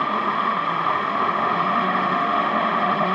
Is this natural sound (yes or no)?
no